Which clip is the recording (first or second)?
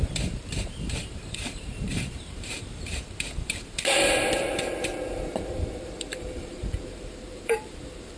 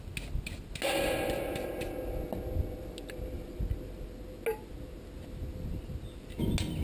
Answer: second